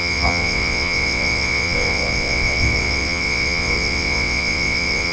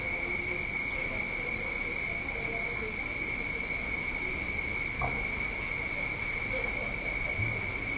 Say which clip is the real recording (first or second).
second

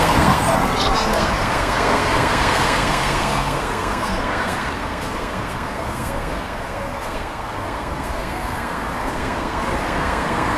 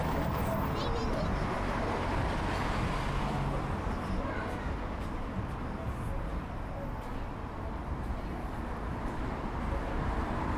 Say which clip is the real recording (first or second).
second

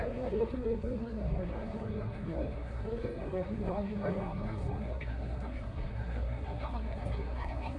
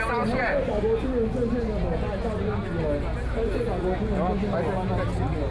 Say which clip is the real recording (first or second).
second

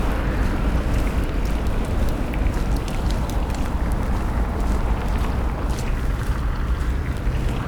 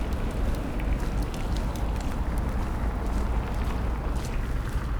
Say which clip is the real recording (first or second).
second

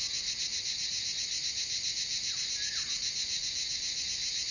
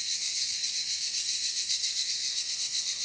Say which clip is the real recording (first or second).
first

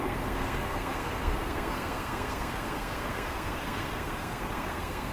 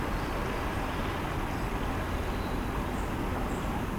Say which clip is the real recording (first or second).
second